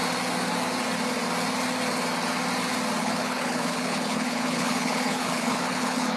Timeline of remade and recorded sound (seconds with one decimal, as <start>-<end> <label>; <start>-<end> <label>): 0.0-3.0 recorded; 3.0-6.2 remade